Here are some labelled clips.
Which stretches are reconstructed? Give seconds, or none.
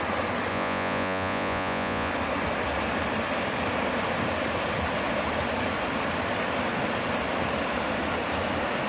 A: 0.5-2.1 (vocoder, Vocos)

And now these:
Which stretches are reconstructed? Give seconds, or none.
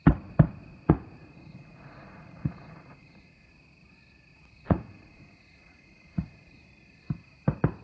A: 0.7-3.5 (vocoder, Vocos); 4.3-6.6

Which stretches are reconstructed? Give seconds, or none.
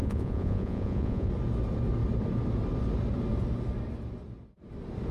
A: 0.0-1.3 (vocoder, Vocos)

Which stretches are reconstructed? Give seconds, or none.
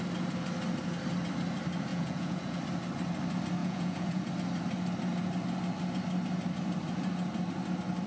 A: 1.9-2.6 (vocoder, Vocos); 3.6-4.3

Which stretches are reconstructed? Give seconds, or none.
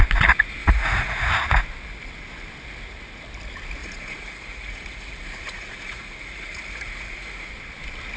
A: 0.6-1.3 (vocoder, Vocos); 3.8-7.5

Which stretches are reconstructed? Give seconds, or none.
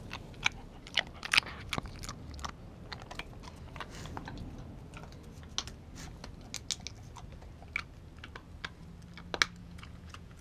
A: 9.6-10.4 (vocoder, Vocos)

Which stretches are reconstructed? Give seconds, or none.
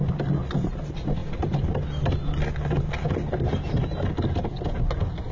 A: none